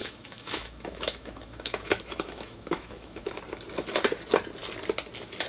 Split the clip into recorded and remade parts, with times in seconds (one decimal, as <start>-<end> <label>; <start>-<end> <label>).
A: 0.0-3.3 remade; 3.3-5.5 recorded

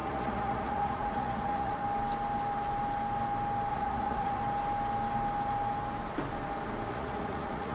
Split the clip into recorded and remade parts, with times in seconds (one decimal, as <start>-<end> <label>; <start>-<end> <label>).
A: 0.0-1.8 remade; 1.8-3.7 recorded; 3.7-4.4 remade; 4.4-6.9 recorded; 6.9-7.7 remade

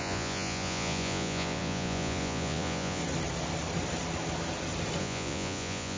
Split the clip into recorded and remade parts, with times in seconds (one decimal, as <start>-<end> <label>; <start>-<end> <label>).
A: 0.0-3.0 remade; 3.0-5.0 recorded; 5.0-6.0 remade

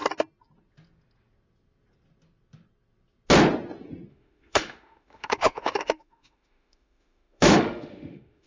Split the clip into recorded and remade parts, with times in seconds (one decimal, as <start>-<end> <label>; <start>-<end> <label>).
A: 0.0-4.1 recorded; 4.1-8.5 remade